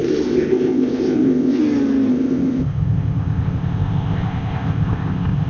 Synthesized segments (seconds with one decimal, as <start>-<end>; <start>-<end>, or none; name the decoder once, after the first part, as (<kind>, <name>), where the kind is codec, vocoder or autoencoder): 0.0-1.6 (codec, ZipCodec); 2.1-5.5